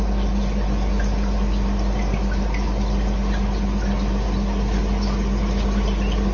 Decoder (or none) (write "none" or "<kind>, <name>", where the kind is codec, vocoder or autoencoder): none